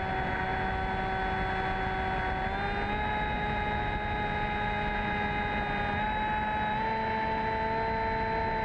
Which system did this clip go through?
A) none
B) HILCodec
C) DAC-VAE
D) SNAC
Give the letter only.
A